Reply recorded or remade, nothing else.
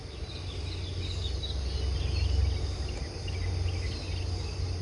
recorded